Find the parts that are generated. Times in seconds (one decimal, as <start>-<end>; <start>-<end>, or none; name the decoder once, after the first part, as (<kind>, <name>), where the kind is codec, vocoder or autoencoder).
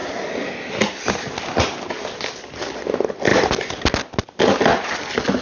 none